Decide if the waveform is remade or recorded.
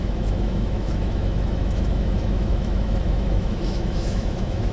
remade